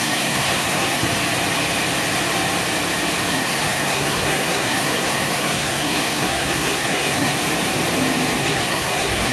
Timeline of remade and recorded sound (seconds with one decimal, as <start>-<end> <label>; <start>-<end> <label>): 0.0-1.0 remade; 1.0-3.3 recorded; 3.3-7.4 remade; 7.4-8.4 recorded; 8.4-9.3 remade